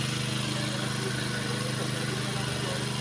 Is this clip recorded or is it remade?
recorded